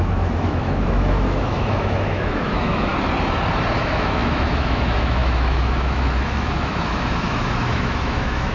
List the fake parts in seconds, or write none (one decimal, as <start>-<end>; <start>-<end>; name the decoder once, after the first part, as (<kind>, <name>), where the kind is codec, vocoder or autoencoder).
0.0-2.9 (autoencoder, DAC-VAE); 3.8-8.5